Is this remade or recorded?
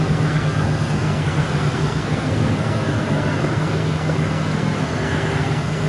remade